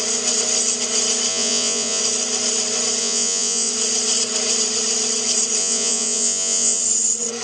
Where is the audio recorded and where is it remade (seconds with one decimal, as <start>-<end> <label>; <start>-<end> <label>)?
0.0-1.3 recorded; 1.3-2.0 remade; 2.0-3.0 recorded; 3.0-3.7 remade; 3.7-5.6 recorded; 5.6-6.8 remade; 6.8-7.4 recorded

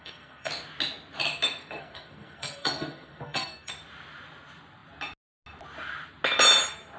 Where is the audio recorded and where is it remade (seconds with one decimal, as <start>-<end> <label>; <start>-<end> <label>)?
0.0-0.5 remade; 0.5-1.6 recorded; 1.6-3.7 remade; 3.7-7.0 recorded

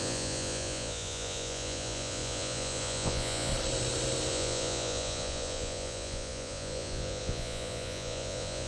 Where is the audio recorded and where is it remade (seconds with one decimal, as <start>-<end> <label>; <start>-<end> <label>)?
0.0-3.5 remade; 3.5-4.3 recorded; 4.3-8.7 remade

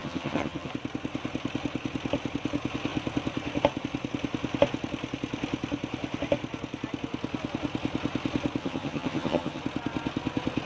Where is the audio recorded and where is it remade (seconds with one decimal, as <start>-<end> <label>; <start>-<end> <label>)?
0.0-0.7 remade; 0.7-8.6 recorded; 8.6-9.6 remade; 9.6-10.7 recorded

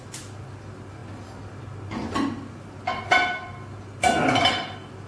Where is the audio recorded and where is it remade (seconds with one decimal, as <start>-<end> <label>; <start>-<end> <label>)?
0.0-5.1 recorded

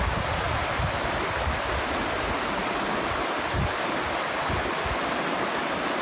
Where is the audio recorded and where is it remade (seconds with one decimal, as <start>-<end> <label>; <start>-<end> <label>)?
0.0-6.0 recorded